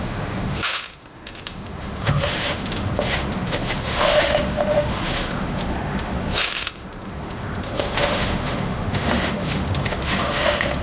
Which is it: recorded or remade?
remade